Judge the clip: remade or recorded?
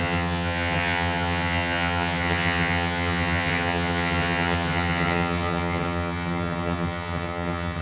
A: remade